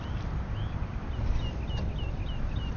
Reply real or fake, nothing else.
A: real